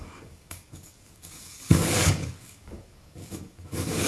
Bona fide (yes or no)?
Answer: no